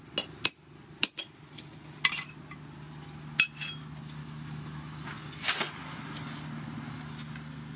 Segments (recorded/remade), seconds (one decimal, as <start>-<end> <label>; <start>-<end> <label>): 0.0-4.2 recorded; 4.2-4.9 remade; 4.9-7.8 recorded